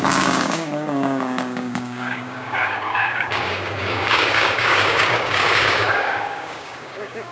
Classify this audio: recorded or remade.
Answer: remade